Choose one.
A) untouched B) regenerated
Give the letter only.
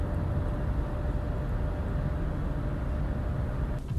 A